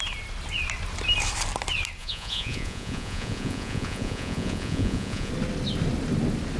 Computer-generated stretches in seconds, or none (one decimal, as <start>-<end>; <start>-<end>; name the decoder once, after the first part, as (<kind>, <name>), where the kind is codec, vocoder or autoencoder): 2.0-5.3 (vocoder, Vocos)